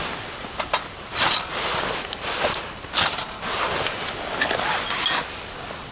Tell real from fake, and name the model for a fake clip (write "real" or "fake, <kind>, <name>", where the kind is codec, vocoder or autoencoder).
real